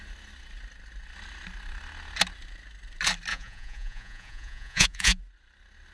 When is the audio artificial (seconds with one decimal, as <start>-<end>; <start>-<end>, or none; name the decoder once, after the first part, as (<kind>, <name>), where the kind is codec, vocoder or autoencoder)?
3.3-5.2 (vocoder, Vocos)